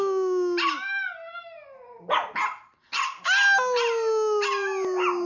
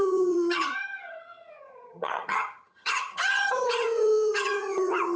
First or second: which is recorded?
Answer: first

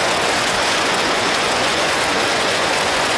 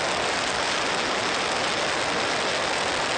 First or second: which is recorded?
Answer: second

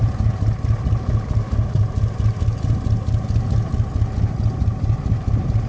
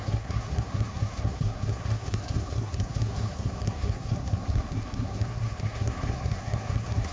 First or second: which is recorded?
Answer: first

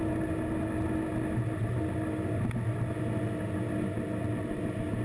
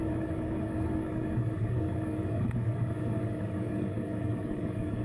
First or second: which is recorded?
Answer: first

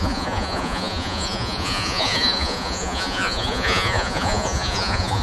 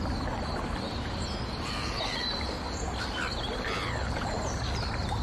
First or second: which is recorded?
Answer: second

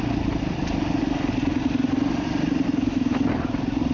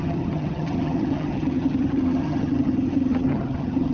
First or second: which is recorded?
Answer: first